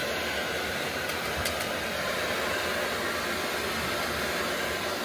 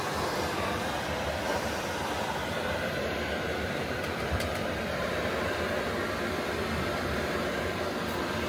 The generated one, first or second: second